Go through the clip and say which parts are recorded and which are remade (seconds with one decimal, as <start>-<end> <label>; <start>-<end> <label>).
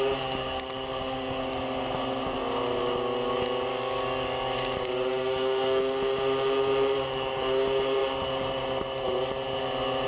0.0-0.4 recorded; 0.4-1.4 remade; 1.4-3.7 recorded; 3.7-5.8 remade; 5.8-10.1 recorded